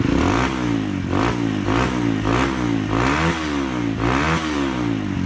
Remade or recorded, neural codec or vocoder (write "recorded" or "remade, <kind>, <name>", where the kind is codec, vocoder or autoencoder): recorded